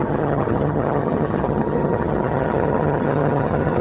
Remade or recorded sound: remade